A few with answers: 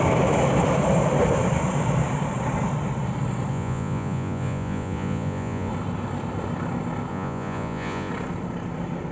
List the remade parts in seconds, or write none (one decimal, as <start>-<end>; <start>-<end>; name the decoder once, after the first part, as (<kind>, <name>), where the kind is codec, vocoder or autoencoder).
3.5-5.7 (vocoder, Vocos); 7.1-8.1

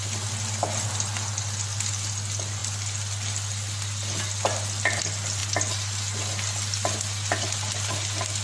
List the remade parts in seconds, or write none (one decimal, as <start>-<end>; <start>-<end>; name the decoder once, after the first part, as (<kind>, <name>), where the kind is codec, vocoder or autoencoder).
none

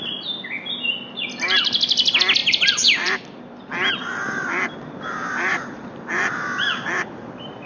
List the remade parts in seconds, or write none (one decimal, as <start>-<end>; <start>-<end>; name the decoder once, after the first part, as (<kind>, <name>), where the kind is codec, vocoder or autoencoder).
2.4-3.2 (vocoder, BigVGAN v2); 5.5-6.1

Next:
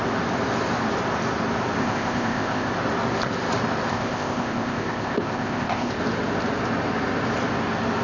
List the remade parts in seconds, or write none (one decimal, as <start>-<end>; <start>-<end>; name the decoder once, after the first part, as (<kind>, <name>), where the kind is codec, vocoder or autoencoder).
1.8-2.7 (codec, ZipCodec); 3.9-6.0

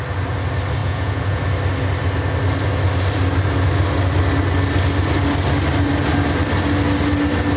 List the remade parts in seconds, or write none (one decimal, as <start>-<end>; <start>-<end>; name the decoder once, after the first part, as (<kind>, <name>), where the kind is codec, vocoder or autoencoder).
0.8-1.4 (vocoder, Vocos)

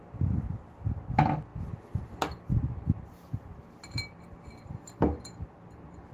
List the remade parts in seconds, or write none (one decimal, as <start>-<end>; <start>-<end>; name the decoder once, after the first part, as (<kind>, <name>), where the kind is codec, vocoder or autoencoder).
none